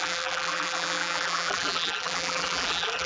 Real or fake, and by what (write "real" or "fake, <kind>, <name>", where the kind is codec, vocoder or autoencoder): fake, vocoder, BigVGAN v2